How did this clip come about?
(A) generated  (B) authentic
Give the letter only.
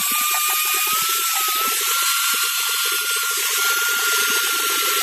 A